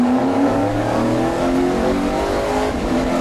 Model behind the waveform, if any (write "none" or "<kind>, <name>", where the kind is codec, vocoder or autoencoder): codec, DAC